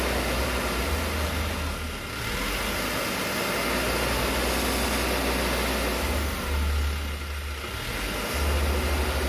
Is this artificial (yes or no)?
no